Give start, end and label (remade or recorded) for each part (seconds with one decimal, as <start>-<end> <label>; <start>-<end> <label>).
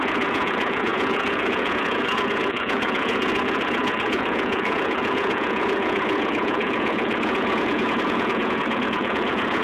0.0-9.6 remade